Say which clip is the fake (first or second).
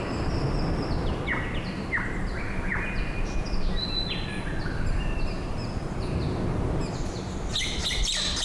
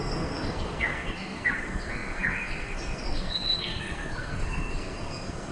second